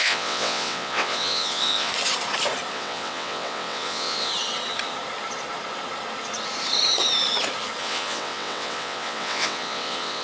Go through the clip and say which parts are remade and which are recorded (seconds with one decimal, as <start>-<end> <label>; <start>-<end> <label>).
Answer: 0.0-1.9 remade; 1.9-2.7 recorded; 2.7-4.3 remade; 4.3-7.8 recorded; 7.8-10.2 remade